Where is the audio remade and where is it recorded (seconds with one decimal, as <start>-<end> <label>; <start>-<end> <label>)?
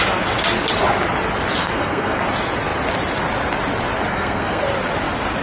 0.0-1.6 recorded; 1.6-2.2 remade; 2.2-4.1 recorded; 4.1-4.6 remade; 4.6-5.4 recorded